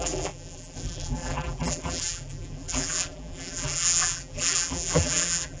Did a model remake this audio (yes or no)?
yes